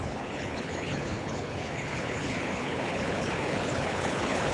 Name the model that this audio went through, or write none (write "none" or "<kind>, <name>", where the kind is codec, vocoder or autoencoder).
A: codec, HILCodec